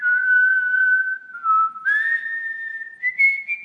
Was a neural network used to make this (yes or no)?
no